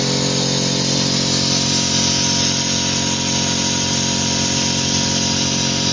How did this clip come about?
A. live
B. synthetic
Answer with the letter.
A